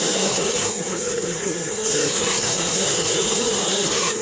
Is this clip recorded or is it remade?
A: remade